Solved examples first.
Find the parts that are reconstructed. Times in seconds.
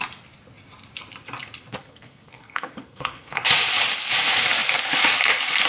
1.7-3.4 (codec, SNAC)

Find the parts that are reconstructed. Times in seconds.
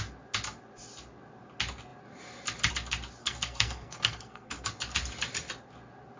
3.2-4.7 (codec, SNAC)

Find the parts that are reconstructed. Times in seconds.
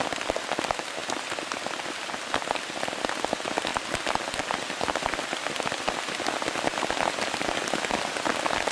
none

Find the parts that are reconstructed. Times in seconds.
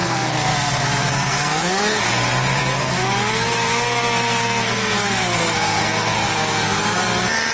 0.0-2.0 (codec, SNAC); 2.6-7.0